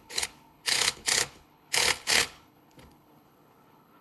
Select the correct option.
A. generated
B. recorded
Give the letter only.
A